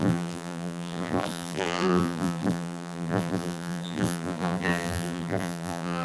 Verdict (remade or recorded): remade